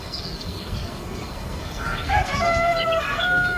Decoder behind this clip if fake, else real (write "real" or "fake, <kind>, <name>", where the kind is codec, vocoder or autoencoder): fake, codec, SNAC